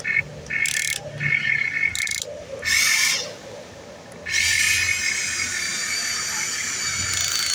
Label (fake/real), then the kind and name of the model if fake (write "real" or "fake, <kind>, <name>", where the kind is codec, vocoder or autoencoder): real